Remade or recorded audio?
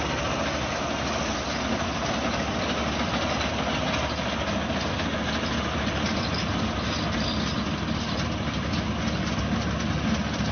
recorded